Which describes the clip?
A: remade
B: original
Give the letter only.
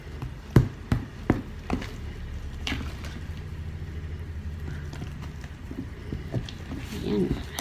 B